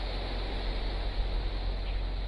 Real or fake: real